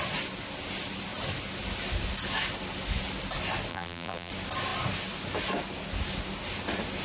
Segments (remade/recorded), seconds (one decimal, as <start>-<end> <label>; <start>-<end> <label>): 0.0-3.7 recorded; 3.7-4.3 remade; 4.3-7.0 recorded